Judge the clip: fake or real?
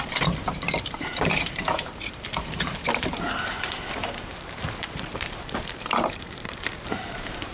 fake